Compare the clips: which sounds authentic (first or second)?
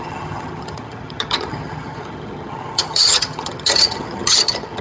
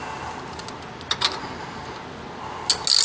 second